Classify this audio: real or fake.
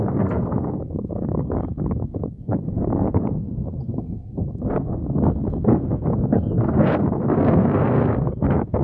fake